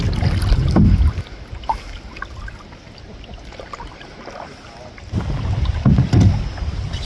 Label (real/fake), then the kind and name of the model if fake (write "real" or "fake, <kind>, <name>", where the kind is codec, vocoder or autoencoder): real